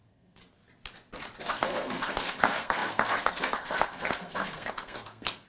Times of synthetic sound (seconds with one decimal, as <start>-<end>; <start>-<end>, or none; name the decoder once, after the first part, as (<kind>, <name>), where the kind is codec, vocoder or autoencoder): 0.0-0.4 (codec, SNAC); 1.4-5.5